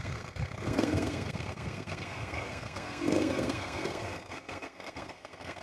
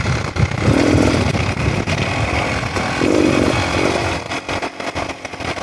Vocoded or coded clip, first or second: first